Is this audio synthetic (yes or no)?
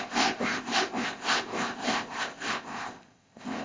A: yes